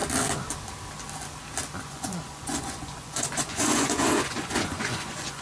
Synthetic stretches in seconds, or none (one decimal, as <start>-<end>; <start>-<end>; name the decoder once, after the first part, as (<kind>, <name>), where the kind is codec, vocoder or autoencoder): 1.8-5.4 (vocoder, Vocos)